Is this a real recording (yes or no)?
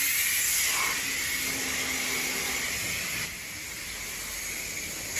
yes